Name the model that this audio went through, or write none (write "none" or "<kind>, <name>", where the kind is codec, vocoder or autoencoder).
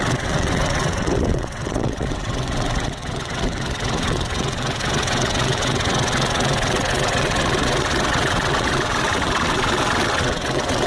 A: vocoder, WaveNeXt